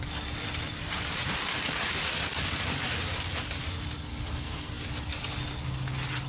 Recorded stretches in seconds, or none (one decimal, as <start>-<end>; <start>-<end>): 0.0-4.1; 4.7-6.3